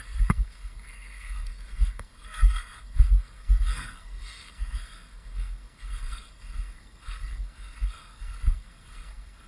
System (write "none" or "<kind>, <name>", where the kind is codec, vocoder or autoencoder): codec, SNAC